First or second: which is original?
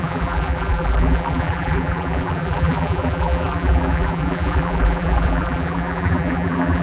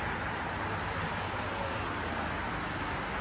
second